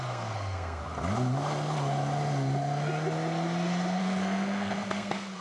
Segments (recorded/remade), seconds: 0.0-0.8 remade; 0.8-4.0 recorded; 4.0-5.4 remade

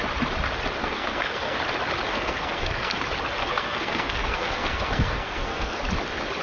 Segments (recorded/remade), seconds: 0.0-0.8 recorded; 0.8-1.6 remade; 1.6-2.1 recorded; 2.1-3.0 remade; 3.0-3.4 recorded; 3.4-5.8 remade; 5.8-6.4 recorded

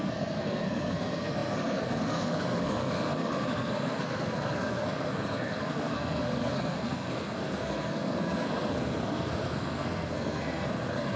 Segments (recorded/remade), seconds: 0.0-11.2 remade

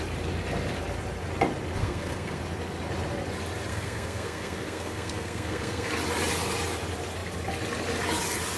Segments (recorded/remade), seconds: 0.0-1.8 recorded; 1.8-2.4 remade; 2.4-3.7 recorded; 3.7-5.9 remade; 5.9-8.6 recorded

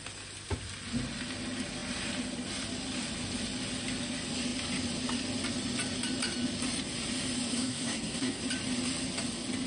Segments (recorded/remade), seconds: 0.0-7.5 recorded; 7.5-8.4 remade; 8.4-9.7 recorded